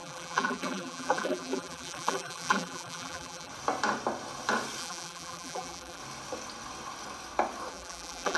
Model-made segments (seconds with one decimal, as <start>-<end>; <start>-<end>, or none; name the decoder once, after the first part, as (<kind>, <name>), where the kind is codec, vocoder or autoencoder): 0.0-3.5 (vocoder, BigVGAN v2); 4.8-6.0; 7.7-8.4